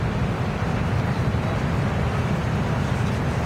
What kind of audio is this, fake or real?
real